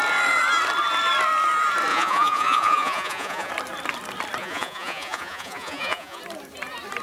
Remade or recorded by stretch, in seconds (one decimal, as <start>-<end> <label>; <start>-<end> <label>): 0.0-1.9 recorded; 1.9-3.5 remade; 3.5-4.4 recorded; 4.4-6.2 remade; 6.2-7.0 recorded